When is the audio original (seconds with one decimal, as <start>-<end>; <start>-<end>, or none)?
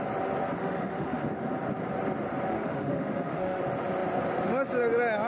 0.0-0.6; 1.3-2.5; 3.6-5.3